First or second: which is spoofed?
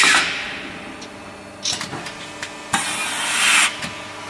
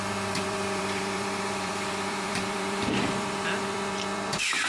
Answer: second